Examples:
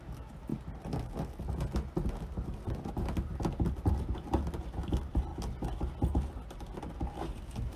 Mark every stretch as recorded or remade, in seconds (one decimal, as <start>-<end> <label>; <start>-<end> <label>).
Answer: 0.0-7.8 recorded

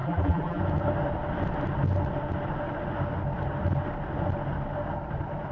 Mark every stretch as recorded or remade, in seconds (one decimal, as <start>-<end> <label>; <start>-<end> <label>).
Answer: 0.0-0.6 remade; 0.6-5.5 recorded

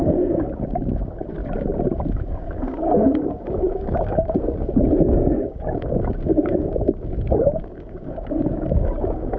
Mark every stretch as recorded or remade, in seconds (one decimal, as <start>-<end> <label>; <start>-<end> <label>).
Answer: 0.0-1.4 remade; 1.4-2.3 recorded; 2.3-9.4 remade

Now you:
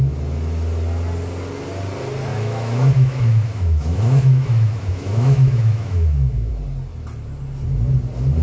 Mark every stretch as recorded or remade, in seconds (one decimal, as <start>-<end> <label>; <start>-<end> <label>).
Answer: 0.0-2.3 recorded; 2.3-6.5 remade; 6.5-8.4 recorded

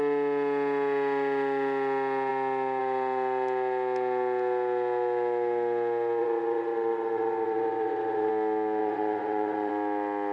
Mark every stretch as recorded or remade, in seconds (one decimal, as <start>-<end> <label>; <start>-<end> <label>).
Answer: 0.0-6.2 recorded; 6.2-8.3 remade; 8.3-8.8 recorded; 8.8-9.7 remade; 9.7-10.3 recorded